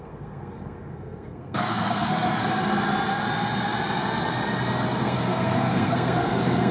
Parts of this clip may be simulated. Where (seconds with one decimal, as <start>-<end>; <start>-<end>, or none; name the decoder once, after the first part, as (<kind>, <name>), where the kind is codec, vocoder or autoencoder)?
0.0-2.4 (codec, SNAC); 5.0-6.7

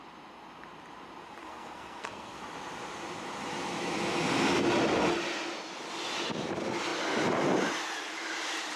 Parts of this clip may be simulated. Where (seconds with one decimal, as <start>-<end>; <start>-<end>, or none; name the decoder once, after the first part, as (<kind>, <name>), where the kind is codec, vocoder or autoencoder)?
1.4-2.4 (codec, SNAC)

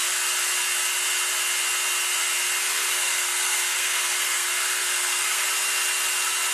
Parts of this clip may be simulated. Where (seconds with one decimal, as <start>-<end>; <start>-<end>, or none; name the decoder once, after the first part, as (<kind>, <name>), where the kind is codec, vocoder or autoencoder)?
2.6-5.4 (codec, SNAC)

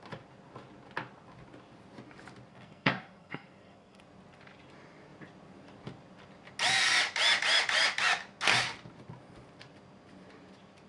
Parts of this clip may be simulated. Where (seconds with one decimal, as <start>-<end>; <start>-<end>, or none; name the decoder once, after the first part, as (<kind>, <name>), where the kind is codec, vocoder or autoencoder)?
2.5-4.0 (codec, SNAC)